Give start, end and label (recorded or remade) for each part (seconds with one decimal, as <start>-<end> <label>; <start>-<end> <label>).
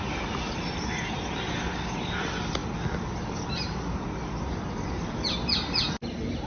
0.0-6.5 recorded